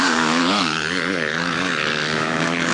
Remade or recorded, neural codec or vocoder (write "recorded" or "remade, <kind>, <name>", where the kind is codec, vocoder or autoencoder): remade, codec, DAC